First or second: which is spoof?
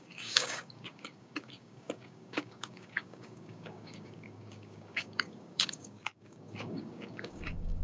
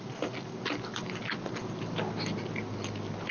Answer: first